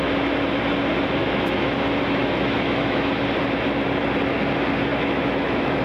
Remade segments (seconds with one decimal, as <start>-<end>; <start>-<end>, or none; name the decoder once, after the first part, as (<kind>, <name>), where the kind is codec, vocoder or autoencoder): 1.2-1.7 (autoencoder, DAC-VAE); 2.2-3.1; 4.9-5.8